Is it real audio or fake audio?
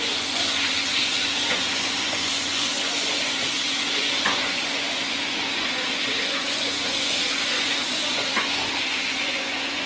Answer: fake